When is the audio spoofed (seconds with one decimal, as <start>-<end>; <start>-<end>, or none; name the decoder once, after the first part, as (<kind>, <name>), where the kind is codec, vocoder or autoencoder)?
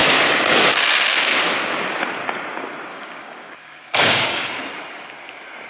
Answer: 2.9-4.6 (codec, DAC)